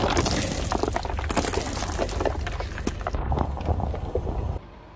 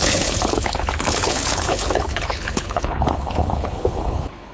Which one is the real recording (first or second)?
first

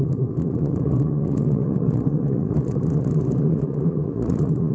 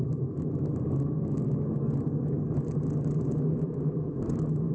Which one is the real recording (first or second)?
second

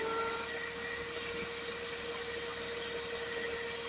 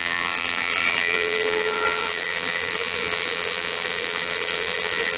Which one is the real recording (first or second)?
first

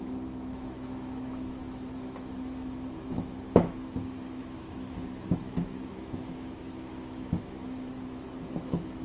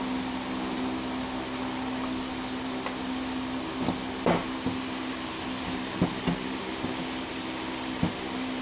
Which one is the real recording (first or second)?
second